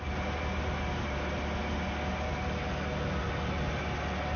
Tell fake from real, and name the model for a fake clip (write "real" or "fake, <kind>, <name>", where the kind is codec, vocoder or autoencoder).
real